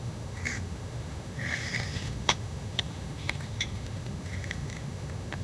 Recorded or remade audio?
remade